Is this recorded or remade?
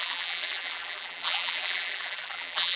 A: remade